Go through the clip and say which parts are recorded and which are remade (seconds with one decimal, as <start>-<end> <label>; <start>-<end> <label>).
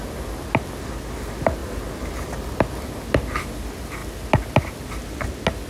0.0-5.7 recorded